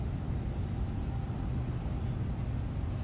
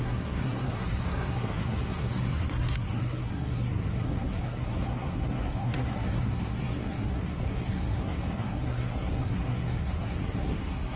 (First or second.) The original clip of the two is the first